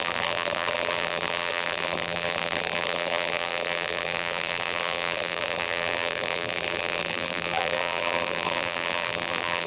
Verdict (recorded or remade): remade